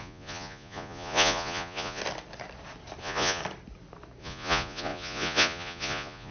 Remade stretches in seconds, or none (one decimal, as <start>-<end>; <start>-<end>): 0.0-2.0; 3.0-3.4; 4.2-6.3